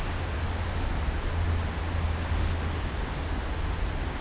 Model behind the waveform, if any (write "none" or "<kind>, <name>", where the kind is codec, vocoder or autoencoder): none